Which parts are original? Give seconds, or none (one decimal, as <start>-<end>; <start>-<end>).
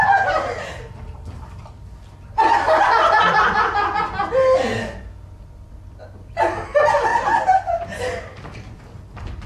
0.0-9.5